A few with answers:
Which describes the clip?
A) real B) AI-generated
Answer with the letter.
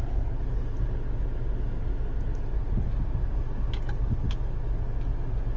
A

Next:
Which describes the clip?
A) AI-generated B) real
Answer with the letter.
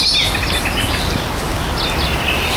B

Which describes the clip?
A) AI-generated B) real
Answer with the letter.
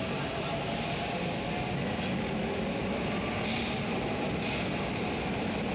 B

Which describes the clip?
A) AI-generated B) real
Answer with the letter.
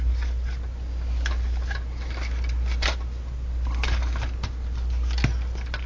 B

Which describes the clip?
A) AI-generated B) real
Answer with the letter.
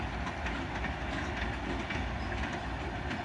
B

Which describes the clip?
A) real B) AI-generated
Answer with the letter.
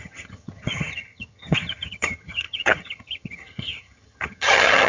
B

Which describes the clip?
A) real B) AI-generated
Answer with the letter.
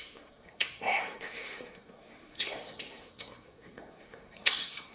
B